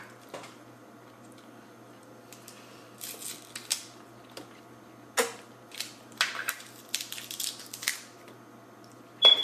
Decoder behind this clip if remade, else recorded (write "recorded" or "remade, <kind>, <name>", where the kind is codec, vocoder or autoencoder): recorded